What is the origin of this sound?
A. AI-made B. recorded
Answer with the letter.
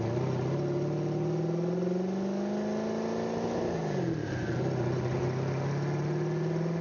B